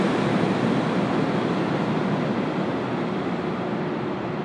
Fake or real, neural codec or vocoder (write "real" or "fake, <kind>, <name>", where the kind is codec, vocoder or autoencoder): real